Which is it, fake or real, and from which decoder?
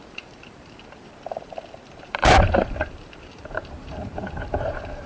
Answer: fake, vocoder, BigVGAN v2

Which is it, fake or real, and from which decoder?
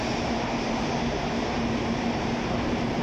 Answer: fake, vocoder, BigVGAN v2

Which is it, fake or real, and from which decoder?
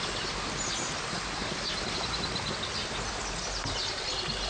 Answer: real